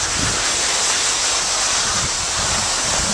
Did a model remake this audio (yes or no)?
no